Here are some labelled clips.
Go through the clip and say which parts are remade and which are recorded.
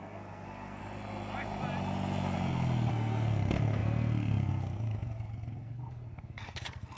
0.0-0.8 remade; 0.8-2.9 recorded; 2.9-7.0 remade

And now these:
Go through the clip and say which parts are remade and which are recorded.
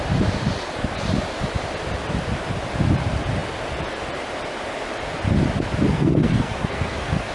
0.0-5.9 recorded; 5.9-7.3 remade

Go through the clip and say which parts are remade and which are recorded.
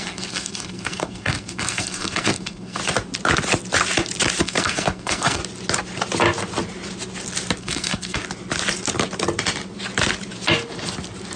0.0-2.8 remade; 2.8-4.4 recorded; 4.4-5.4 remade; 5.4-7.6 recorded; 7.6-8.2 remade; 8.2-11.4 recorded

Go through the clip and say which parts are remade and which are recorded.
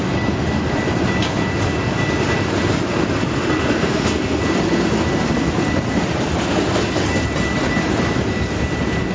0.0-3.8 recorded; 3.8-4.4 remade; 4.4-9.1 recorded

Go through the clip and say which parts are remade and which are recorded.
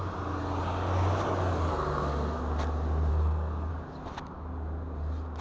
0.0-1.7 recorded; 1.7-2.4 remade; 2.4-3.1 recorded; 3.1-3.7 remade; 3.7-5.4 recorded